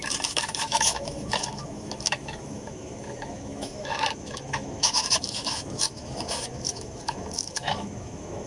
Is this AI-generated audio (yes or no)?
yes